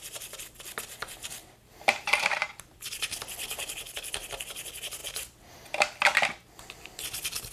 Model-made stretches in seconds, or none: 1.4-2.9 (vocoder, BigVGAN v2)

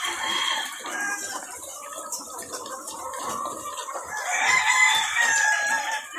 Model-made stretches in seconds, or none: 0.0-6.2 (vocoder, BigVGAN v2)

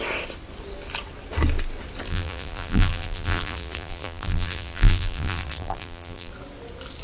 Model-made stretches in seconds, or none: 2.1-6.3 (vocoder, BigVGAN v2)

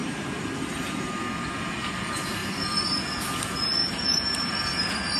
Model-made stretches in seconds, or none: 0.0-0.6 (vocoder, BigVGAN v2); 3.8-4.5

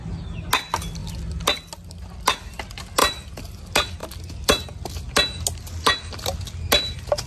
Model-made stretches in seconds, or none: 3.0-3.6 (vocoder, BigVGAN v2); 4.0-5.1

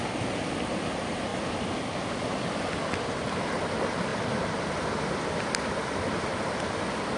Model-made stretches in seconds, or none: none

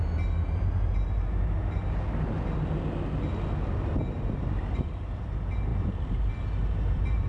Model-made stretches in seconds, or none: 4.4-7.3 (vocoder, BigVGAN v2)

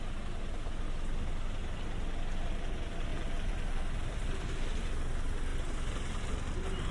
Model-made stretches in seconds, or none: 3.1-4.9 (vocoder, BigVGAN v2)